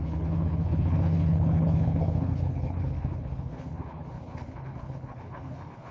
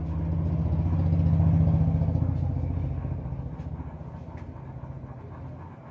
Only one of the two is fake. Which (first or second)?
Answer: first